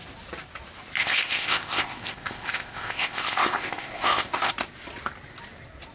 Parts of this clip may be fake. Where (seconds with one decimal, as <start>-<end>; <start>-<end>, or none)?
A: 1.0-4.5